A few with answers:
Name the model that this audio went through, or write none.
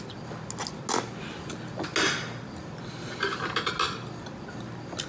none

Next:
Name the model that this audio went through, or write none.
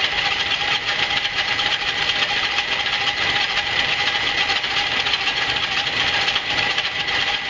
vocoder, BigVGAN v2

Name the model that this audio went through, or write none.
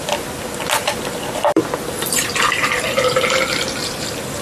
vocoder, BigVGAN v2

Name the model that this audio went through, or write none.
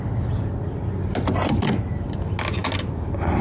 none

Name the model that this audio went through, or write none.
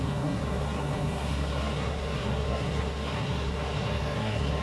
codec, SNAC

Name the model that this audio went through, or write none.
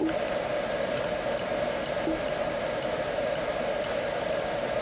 none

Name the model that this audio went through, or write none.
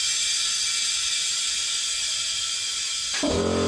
none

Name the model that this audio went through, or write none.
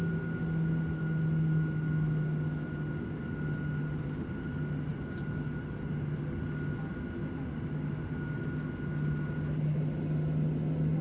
none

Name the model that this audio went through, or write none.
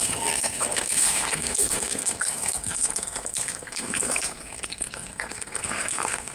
codec, SNAC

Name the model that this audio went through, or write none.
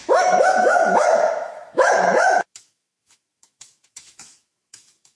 autoencoder, DAC-VAE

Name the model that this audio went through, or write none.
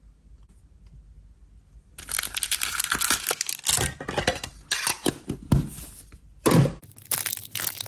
none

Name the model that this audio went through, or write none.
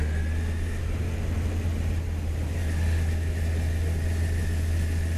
none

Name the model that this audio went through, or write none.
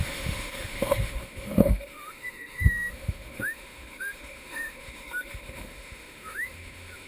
autoencoder, DAC-VAE